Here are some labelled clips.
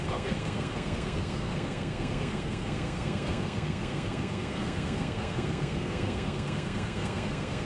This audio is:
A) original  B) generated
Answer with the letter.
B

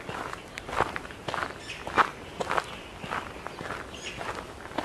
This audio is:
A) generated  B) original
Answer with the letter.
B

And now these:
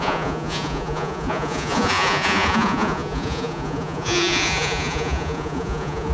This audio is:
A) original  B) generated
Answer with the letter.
B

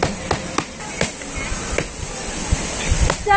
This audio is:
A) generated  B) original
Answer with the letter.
B